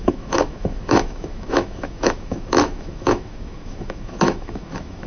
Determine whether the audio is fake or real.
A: fake